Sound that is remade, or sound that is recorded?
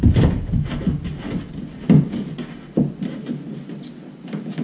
recorded